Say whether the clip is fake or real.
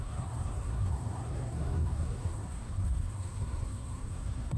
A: fake